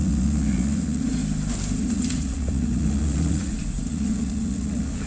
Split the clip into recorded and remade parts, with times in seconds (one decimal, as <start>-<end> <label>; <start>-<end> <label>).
0.0-1.2 remade; 1.2-1.8 recorded; 1.8-5.1 remade